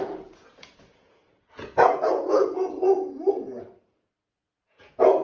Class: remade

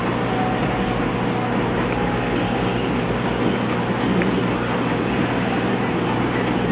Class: recorded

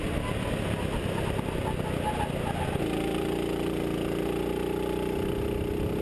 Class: recorded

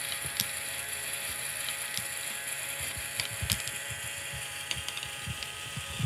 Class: remade